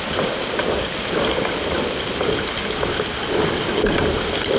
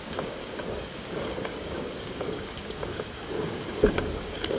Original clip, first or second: first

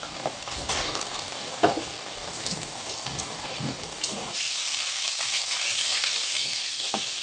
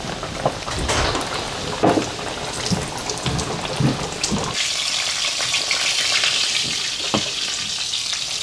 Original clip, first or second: second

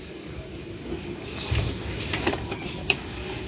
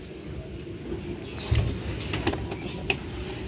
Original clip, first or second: second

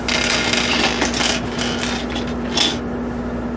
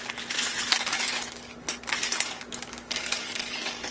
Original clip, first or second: first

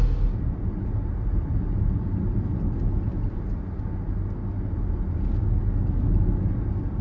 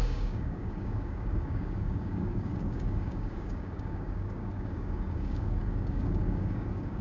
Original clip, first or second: first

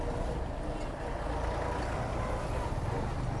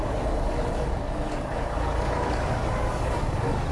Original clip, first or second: first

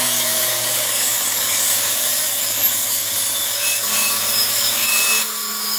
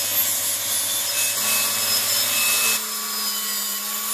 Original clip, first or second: second